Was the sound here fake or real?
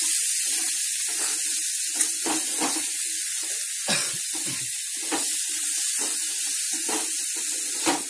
real